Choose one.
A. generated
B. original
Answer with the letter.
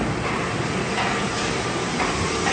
B